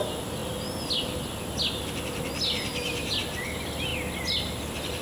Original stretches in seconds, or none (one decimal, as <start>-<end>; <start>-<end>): 0.0-5.0